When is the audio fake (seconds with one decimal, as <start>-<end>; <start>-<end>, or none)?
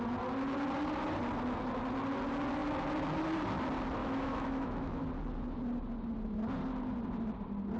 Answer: 4.0-5.0